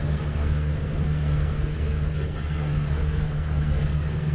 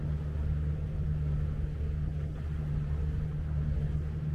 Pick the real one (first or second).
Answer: second